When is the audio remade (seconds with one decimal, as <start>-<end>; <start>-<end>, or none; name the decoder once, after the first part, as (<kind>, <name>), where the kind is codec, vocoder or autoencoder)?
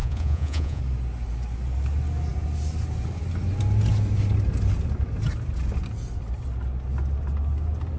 0.0-0.8 (vocoder, Vocos)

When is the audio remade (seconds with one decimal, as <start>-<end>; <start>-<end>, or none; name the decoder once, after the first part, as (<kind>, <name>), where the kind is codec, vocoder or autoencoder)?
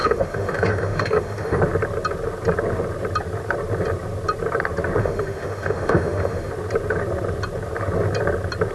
0.0-1.6 (autoencoder, DAC-VAE); 5.0-6.5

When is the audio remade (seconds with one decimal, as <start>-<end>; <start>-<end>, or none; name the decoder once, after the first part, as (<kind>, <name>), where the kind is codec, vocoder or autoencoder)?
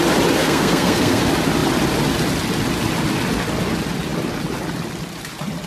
0.4-1.2 (codec, SNAC)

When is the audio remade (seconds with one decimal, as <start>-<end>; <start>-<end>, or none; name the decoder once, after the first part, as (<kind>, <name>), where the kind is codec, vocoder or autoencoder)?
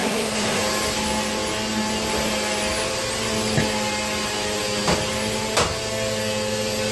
0.0-0.6 (codec, SNAC)